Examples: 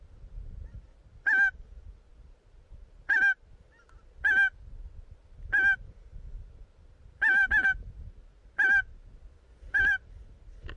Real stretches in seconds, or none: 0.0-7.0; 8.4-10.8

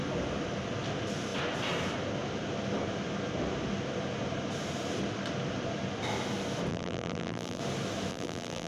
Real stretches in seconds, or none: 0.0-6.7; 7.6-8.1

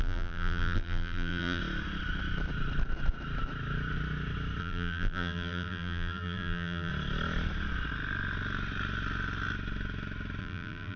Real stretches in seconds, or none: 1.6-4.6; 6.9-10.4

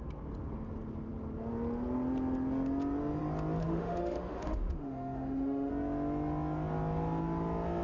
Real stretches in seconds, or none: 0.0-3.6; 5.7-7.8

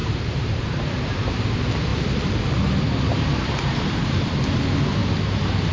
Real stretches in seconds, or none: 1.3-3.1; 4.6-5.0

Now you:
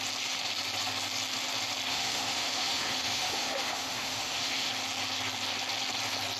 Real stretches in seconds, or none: 0.0-1.9; 4.7-6.4